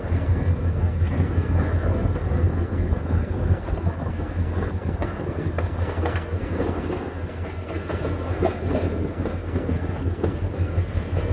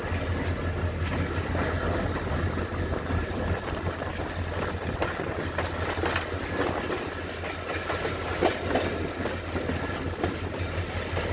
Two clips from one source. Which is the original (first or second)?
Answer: second